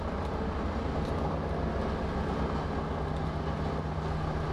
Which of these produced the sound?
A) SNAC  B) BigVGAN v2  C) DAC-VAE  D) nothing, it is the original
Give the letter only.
D